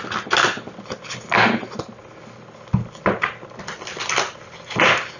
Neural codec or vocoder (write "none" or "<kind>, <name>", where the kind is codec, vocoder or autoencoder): none